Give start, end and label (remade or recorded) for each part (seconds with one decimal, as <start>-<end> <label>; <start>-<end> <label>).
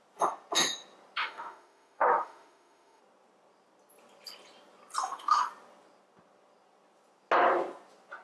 0.0-1.2 recorded; 1.2-3.0 remade; 3.0-5.0 recorded; 5.0-5.5 remade; 5.5-8.2 recorded